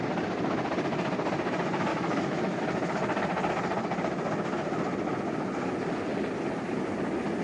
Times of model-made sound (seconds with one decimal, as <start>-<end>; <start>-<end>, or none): 1.9-2.6